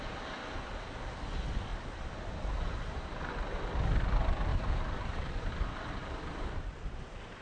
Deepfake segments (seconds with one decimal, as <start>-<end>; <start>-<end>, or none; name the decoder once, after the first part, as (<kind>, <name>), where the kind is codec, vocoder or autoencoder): 1.7-3.3 (vocoder, BigVGAN v2); 4.5-5.5; 6.0-6.7